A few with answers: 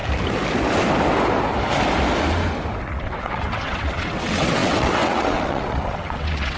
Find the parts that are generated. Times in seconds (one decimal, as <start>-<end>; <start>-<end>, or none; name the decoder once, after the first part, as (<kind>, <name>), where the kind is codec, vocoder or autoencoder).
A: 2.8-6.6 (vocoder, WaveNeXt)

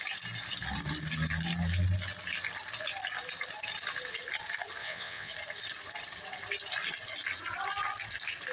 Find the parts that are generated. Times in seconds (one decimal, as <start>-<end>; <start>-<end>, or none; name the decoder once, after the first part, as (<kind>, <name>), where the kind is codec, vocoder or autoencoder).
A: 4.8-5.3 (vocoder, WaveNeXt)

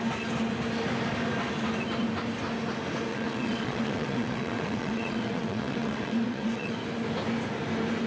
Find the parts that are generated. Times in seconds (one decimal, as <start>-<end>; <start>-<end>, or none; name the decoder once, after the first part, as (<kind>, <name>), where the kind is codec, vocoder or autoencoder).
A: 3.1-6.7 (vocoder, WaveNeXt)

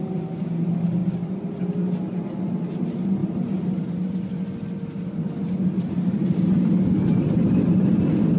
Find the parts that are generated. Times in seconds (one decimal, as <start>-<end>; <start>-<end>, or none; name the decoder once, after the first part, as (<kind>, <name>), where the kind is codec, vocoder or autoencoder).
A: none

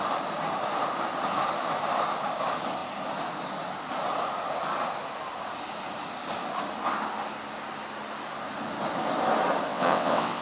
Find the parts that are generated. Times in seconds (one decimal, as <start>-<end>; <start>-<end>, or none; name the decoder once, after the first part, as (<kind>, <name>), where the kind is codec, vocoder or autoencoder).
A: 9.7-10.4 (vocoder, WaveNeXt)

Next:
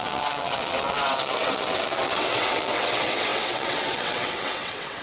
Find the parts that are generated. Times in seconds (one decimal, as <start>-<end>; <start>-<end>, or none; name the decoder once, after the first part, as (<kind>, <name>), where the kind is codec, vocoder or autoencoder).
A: 0.0-5.0 (vocoder, WaveNeXt)

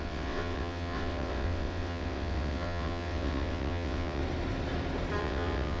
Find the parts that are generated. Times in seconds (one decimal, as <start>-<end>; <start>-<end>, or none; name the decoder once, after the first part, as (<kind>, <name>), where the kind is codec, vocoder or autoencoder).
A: 0.0-4.2 (vocoder, WaveNeXt); 5.2-5.8

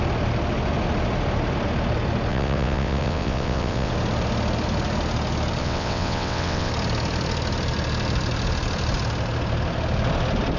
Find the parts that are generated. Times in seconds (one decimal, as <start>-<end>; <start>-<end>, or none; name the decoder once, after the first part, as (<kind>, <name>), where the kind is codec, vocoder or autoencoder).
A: 2.3-3.9 (vocoder, WaveNeXt); 5.6-6.7